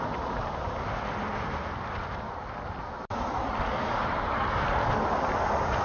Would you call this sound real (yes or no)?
no